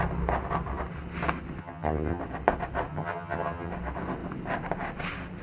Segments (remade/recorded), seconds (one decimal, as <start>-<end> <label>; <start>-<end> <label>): 0.0-1.6 recorded; 1.6-2.2 remade; 2.2-2.9 recorded; 2.9-3.7 remade; 3.7-5.4 recorded